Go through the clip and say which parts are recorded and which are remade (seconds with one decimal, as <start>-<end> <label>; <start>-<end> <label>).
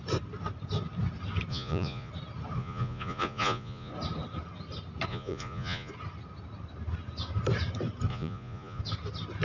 0.0-1.5 recorded; 1.5-2.1 remade; 2.1-2.6 recorded; 2.6-3.9 remade; 3.9-5.1 recorded; 5.1-5.9 remade; 5.9-8.1 recorded; 8.1-8.8 remade; 8.8-9.4 recorded